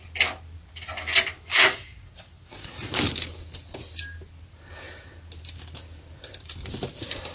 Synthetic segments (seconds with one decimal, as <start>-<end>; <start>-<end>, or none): 1.5-2.9

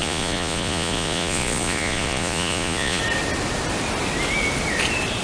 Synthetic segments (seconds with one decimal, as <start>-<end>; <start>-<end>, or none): 0.0-3.0

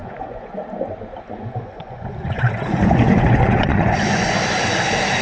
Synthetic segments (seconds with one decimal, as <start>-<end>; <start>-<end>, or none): 0.0-0.6; 1.3-4.4

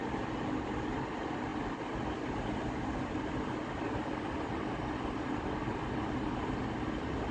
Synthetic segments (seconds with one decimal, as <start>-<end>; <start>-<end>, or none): none

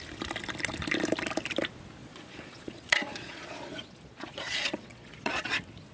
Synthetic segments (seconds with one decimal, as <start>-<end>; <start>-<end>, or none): 2.0-5.5

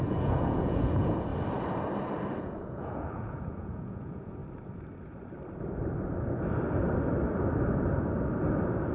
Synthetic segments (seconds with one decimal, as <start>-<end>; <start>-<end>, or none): 0.0-1.3; 2.4-4.4

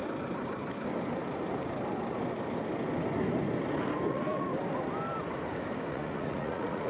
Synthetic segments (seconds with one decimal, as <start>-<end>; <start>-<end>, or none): 4.1-4.5; 5.9-6.9

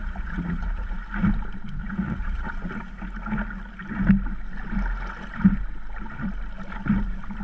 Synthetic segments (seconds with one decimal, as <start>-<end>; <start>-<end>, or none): 0.0-1.0; 1.8-2.7